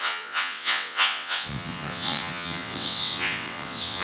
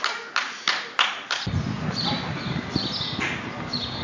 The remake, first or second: first